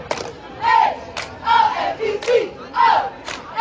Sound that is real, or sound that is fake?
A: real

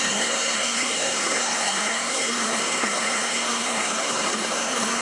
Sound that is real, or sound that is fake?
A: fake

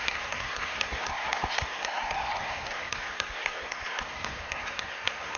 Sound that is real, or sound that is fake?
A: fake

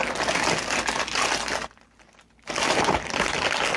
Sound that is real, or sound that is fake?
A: real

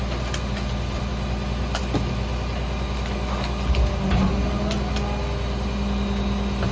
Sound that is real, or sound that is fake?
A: real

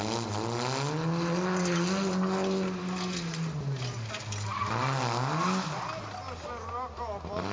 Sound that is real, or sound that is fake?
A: real